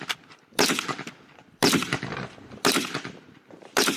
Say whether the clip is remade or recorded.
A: remade